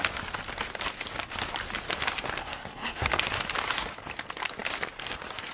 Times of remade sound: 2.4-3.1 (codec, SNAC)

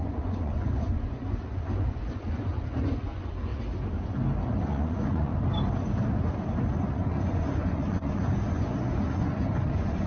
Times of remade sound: 0.0-3.5 (vocoder, Vocos); 4.5-5.3; 6.9-10.1

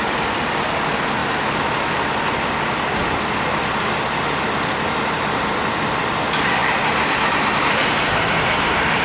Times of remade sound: none

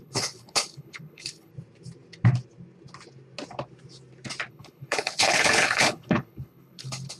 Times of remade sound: 0.0-1.5 (codec, HILCodec); 4.5-7.2

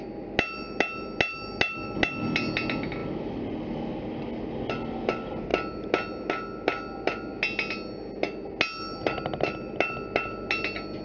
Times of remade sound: none

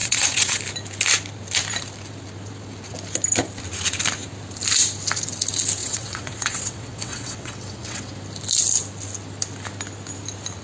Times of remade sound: 0.0-0.6 (vocoder, WaveNeXt); 5.8-8.1

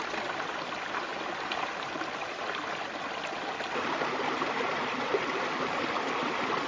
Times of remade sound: none